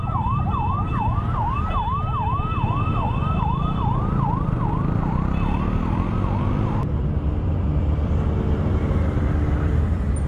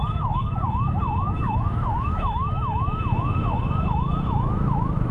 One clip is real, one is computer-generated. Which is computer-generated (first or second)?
second